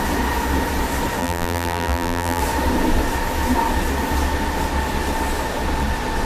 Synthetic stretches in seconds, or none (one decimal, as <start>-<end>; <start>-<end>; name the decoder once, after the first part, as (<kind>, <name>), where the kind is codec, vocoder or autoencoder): 1.2-2.4 (vocoder, BigVGAN v2)